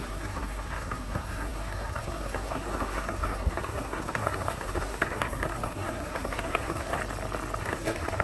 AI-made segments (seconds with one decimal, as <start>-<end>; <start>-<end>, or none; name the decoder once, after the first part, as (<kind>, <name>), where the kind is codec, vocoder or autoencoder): 0.0-7.0 (codec, SNAC); 7.6-8.2